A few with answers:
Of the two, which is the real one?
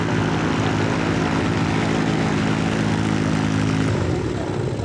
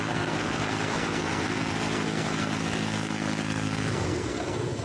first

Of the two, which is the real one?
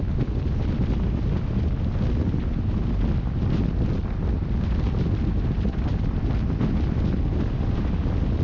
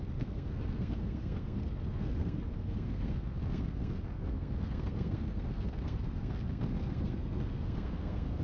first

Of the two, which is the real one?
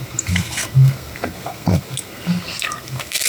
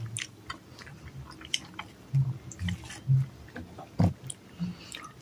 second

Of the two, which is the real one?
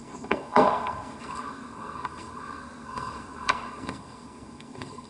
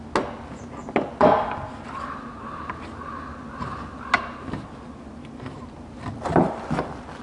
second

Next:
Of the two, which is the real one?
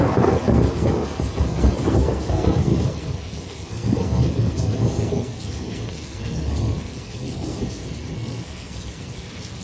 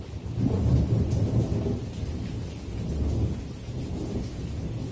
second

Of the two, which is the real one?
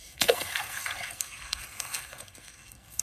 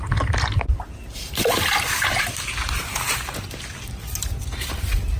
second